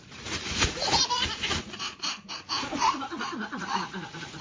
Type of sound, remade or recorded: remade